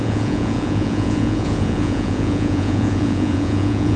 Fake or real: fake